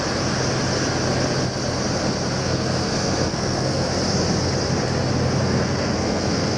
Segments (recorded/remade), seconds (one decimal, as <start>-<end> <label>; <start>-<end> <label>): 0.0-2.4 recorded; 2.4-3.9 remade; 3.9-5.4 recorded; 5.4-6.6 remade